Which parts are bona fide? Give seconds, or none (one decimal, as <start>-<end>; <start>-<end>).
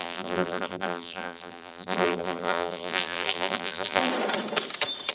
4.1-5.1